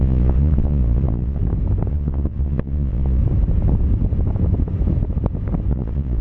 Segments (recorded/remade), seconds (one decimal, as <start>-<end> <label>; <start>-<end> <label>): 0.0-1.4 remade; 1.4-1.9 recorded; 1.9-3.2 remade; 3.2-5.7 recorded; 5.7-6.2 remade